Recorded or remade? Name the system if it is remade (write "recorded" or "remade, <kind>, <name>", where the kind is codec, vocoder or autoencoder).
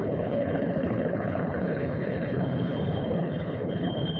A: remade, codec, HILCodec